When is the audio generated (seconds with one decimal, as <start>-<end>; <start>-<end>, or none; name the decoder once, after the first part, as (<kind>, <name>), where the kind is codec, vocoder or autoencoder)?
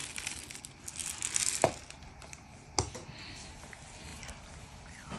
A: none